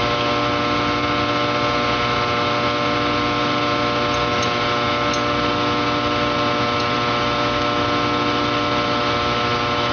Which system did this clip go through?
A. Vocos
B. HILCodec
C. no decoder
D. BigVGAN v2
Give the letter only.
C